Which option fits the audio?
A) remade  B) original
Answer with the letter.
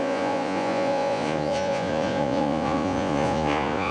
A